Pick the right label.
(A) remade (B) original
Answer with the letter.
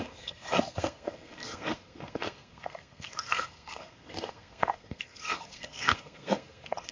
A